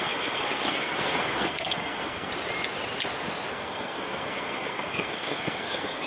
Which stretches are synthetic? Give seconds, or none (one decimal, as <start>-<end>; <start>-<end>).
0.0-2.3; 3.5-6.1